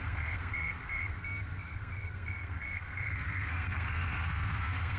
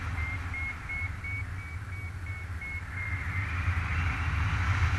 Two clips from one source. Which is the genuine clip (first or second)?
second